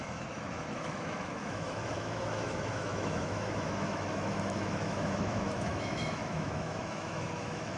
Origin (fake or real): fake